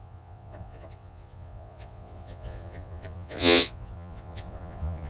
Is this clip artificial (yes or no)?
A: yes